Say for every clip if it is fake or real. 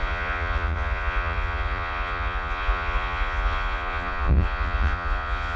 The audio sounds fake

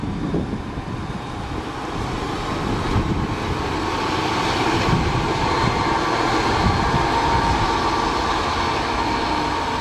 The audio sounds real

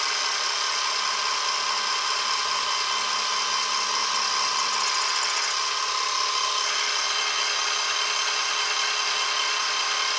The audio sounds real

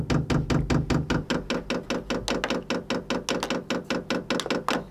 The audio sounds real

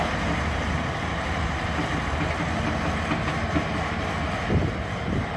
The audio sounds real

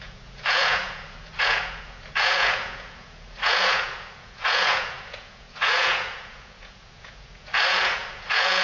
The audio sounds fake